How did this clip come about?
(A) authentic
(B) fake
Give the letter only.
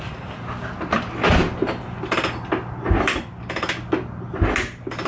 A